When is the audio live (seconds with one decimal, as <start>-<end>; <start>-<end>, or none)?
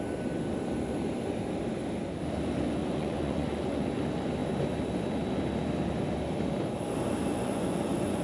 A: 0.0-2.8; 3.9-7.3